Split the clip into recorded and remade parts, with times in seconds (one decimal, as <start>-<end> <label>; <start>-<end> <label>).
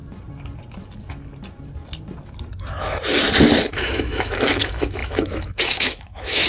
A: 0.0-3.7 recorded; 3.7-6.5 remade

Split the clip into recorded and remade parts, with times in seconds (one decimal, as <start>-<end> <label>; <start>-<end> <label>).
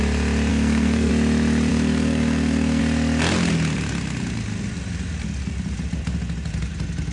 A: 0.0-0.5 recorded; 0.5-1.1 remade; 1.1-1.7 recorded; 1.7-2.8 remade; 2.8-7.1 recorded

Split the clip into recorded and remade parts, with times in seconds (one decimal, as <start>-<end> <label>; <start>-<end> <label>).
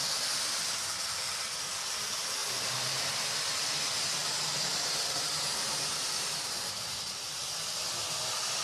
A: 0.0-2.4 recorded; 2.4-3.2 remade; 3.2-4.2 recorded; 4.2-7.4 remade; 7.4-8.6 recorded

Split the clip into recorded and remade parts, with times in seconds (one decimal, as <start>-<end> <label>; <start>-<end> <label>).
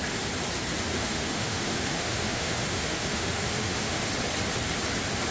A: 0.0-0.9 recorded; 0.9-4.1 remade; 4.1-5.3 recorded